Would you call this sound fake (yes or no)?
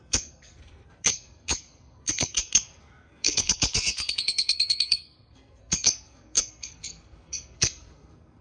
yes